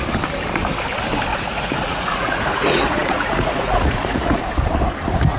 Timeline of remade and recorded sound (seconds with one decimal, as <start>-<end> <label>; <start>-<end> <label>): 0.0-1.3 recorded; 1.3-4.5 remade; 4.5-5.4 recorded